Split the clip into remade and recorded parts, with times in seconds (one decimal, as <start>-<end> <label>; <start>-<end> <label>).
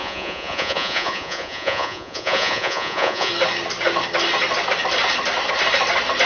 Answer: 0.0-3.3 remade; 3.3-6.3 recorded